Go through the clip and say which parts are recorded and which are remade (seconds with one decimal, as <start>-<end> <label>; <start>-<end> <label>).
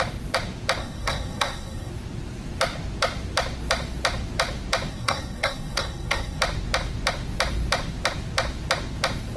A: 0.0-0.8 recorded; 0.8-1.9 remade; 1.9-4.9 recorded; 4.9-6.4 remade; 6.4-9.4 recorded